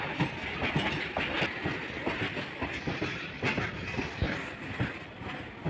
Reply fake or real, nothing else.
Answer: real